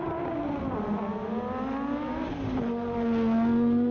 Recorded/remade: recorded